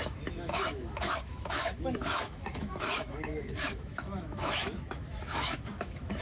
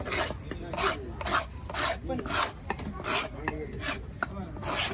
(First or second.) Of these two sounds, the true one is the second